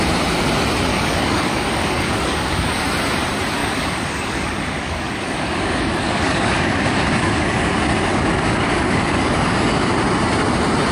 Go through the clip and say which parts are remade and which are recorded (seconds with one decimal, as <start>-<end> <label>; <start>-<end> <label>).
0.0-0.9 recorded; 0.9-2.8 remade; 2.8-3.6 recorded; 3.6-7.7 remade; 7.7-8.1 recorded; 8.1-9.9 remade; 9.9-10.9 recorded